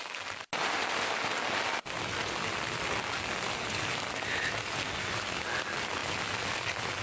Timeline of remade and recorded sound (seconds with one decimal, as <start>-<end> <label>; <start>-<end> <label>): 0.0-7.0 recorded